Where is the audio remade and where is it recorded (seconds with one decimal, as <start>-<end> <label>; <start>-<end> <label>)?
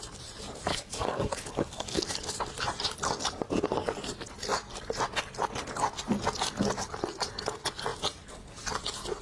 0.0-0.7 recorded; 0.7-2.2 remade; 2.2-9.2 recorded